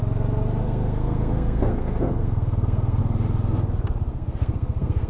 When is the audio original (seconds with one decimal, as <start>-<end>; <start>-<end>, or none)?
0.0-0.6; 3.0-4.1